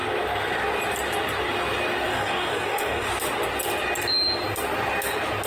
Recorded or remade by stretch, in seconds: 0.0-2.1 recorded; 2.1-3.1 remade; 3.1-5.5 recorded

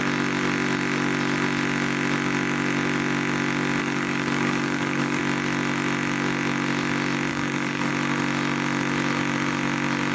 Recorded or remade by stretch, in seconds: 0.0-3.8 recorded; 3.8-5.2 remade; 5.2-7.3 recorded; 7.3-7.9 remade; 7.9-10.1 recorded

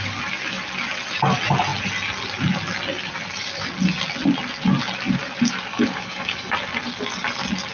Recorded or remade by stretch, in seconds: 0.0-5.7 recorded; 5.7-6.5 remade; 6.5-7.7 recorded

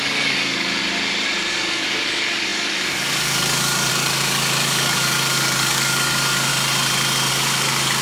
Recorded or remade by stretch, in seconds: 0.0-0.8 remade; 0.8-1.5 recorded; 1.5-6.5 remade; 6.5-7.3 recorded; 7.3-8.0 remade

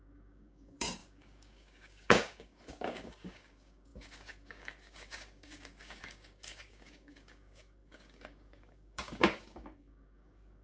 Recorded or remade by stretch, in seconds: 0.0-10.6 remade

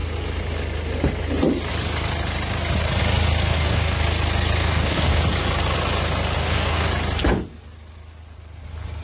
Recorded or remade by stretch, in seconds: 0.0-3.5 recorded; 3.5-4.0 remade; 4.0-4.6 recorded; 4.6-5.2 remade; 5.2-6.4 recorded; 6.4-6.9 remade; 6.9-9.0 recorded

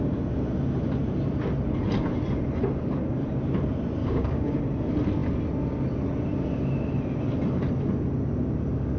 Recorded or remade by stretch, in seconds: 0.0-4.0 recorded; 4.0-4.6 remade; 4.6-9.0 recorded

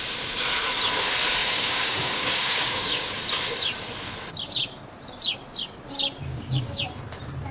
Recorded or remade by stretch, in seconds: 0.0-1.4 recorded; 1.4-3.2 remade; 3.2-6.3 recorded; 6.3-6.8 remade; 6.8-7.5 recorded